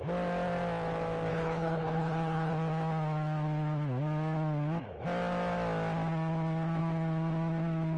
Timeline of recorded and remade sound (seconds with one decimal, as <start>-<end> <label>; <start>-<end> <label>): 0.0-1.3 recorded; 1.3-2.5 remade; 2.5-8.0 recorded